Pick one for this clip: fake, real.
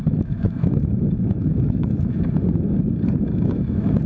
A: fake